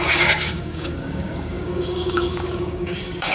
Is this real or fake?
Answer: fake